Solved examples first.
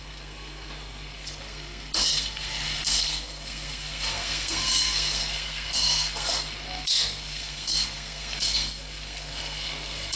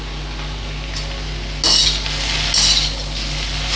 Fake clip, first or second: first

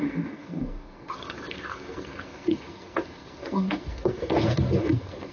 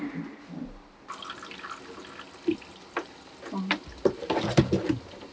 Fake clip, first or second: first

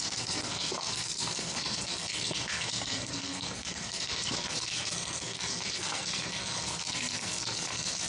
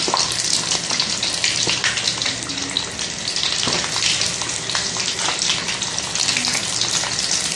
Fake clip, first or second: first